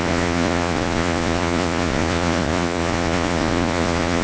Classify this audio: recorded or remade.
remade